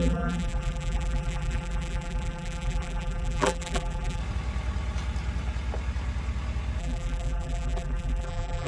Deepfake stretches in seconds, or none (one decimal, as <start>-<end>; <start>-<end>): 0.0-4.2; 6.8-8.7